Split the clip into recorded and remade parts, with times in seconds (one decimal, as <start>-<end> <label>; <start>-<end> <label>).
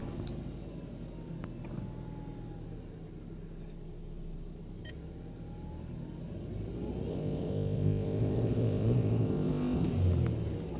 0.0-7.1 recorded; 7.1-9.9 remade; 9.9-10.8 recorded